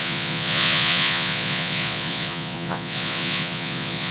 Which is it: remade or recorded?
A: remade